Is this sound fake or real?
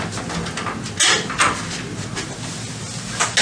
real